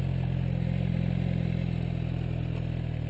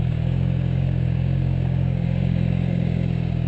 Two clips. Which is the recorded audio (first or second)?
first